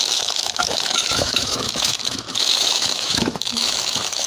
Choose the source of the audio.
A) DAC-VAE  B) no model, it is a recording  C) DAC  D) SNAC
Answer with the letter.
A